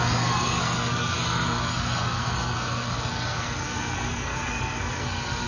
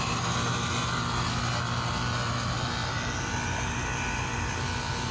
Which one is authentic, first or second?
second